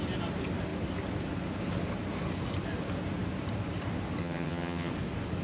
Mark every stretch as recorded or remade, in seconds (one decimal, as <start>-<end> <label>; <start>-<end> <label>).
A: 0.0-4.2 recorded; 4.2-4.9 remade; 4.9-5.4 recorded